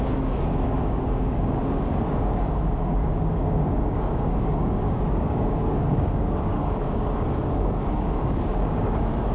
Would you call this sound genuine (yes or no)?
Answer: no